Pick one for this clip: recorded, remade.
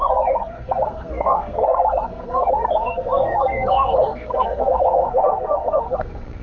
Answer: remade